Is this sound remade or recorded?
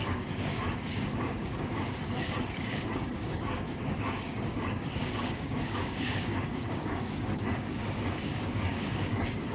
remade